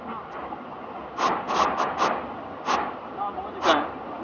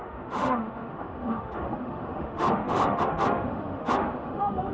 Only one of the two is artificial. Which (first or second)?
second